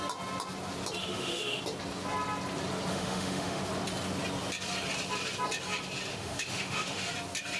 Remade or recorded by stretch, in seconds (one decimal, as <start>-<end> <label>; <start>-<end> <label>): 0.0-1.0 recorded; 1.0-1.6 remade; 1.6-2.9 recorded; 2.9-3.6 remade; 3.6-6.1 recorded; 6.1-7.1 remade; 7.1-7.6 recorded